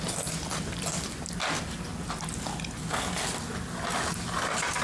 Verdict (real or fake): real